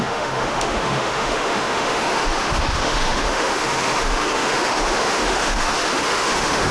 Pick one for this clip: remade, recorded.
remade